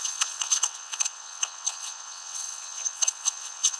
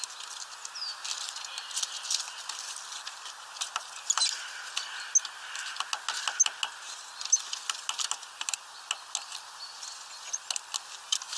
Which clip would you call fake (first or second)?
first